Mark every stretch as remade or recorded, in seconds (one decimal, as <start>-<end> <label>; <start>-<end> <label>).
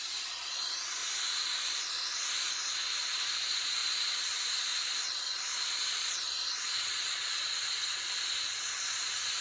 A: 0.0-1.0 remade; 1.0-3.4 recorded; 3.4-9.4 remade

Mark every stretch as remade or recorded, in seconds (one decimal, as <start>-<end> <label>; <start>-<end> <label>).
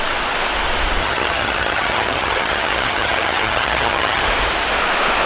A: 0.0-1.0 recorded; 1.0-4.2 remade; 4.2-5.3 recorded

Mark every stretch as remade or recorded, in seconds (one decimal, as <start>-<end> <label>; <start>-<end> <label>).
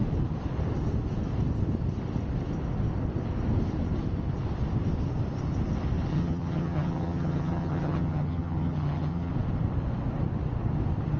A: 0.0-6.1 recorded; 6.1-9.3 remade; 9.3-11.2 recorded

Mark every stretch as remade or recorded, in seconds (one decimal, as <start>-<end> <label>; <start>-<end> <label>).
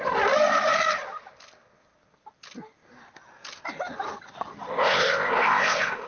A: 0.0-4.7 recorded; 4.7-6.1 remade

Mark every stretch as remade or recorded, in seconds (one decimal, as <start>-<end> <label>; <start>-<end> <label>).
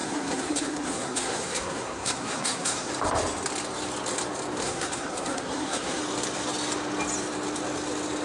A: 0.0-2.9 remade; 2.9-4.6 recorded; 4.6-6.0 remade; 6.0-8.2 recorded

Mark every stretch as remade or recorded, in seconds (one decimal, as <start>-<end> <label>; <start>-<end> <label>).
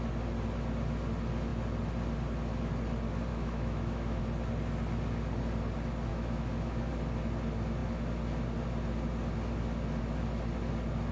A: 0.0-3.3 recorded; 3.3-4.2 remade; 4.2-6.1 recorded; 6.1-6.9 remade; 6.9-11.1 recorded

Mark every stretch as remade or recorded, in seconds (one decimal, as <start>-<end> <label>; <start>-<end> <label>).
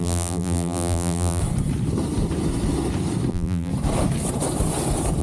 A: 0.0-1.4 remade; 1.4-3.3 recorded; 3.3-3.7 remade; 3.7-5.2 recorded